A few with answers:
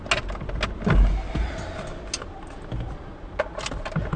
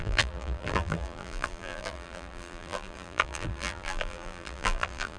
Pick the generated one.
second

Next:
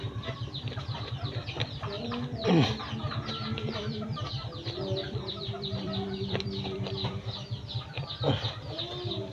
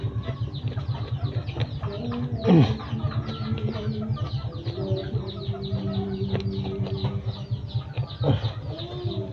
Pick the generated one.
first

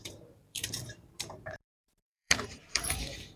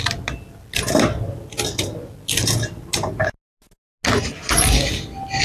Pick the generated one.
first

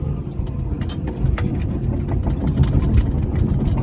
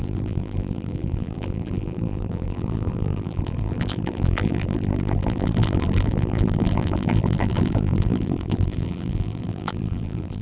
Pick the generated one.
second